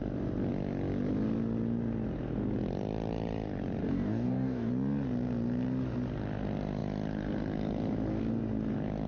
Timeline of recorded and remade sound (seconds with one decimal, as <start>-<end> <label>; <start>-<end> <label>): 0.0-3.8 recorded; 3.8-4.7 remade; 4.7-9.1 recorded